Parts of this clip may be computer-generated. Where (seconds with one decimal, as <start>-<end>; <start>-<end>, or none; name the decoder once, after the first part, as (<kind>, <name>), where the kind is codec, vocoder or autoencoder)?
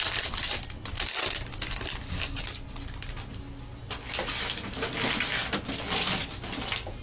none